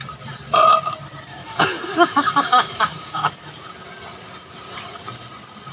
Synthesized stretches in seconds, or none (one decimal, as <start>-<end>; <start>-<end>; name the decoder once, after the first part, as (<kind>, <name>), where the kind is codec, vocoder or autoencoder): 1.4-3.3 (autoencoder, DAC-VAE)

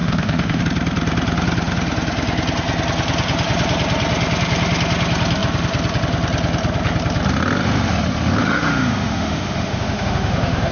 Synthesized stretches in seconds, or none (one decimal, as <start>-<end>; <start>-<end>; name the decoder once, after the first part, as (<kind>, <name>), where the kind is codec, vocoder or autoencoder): 0.0-0.6 (autoencoder, DAC-VAE); 8.4-10.7